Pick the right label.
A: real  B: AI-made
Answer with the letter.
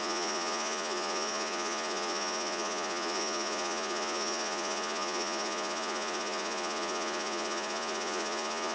B